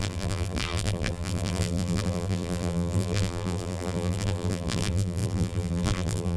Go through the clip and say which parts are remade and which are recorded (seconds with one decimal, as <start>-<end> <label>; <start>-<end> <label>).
0.0-6.4 remade